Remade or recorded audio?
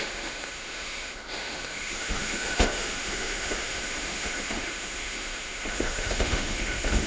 remade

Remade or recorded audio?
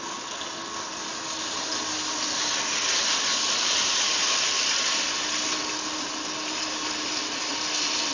recorded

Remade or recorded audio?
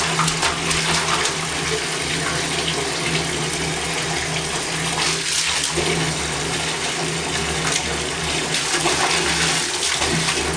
recorded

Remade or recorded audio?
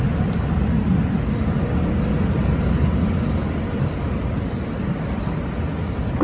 recorded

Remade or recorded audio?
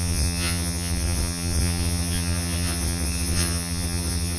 remade